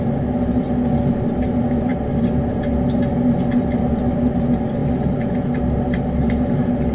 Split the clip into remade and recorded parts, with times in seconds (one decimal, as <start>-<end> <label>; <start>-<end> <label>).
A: 0.0-6.9 recorded